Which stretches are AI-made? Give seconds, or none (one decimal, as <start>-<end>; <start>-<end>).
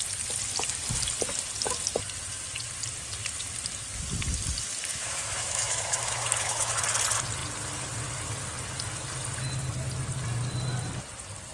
4.9-6.8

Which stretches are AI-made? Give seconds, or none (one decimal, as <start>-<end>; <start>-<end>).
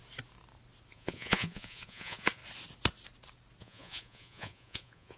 0.9-2.4; 3.6-5.2